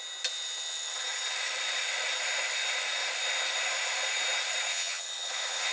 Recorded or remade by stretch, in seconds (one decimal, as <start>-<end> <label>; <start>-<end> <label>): 0.0-4.7 recorded; 4.7-5.7 remade